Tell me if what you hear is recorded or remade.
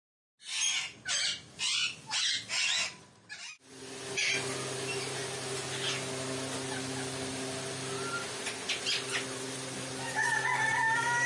recorded